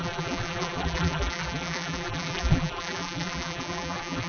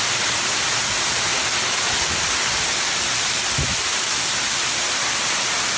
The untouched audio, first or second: second